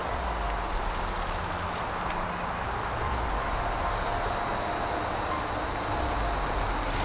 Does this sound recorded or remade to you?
recorded